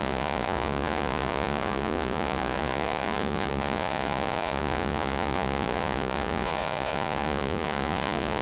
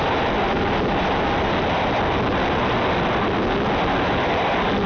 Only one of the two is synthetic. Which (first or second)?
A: first